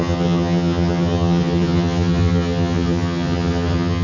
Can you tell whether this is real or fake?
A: fake